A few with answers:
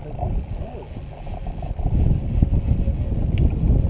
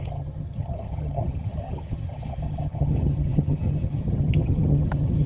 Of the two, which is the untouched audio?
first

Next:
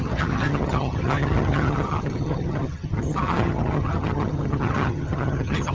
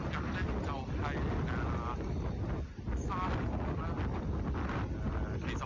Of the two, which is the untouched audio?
second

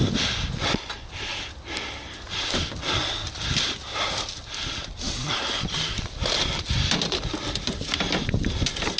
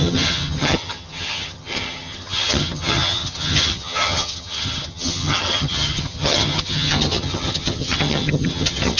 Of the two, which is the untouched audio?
first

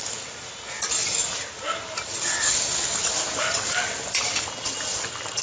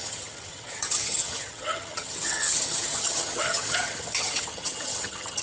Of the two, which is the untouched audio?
first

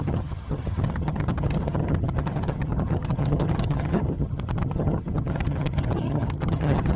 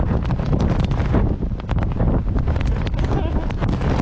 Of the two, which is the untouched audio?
second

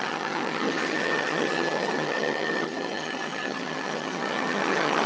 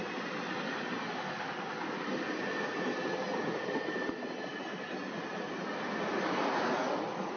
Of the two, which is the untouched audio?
second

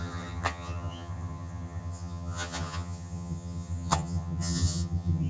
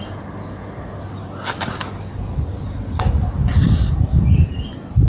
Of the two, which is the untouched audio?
second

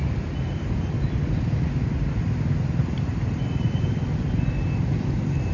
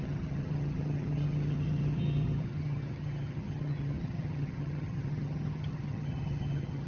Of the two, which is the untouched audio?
first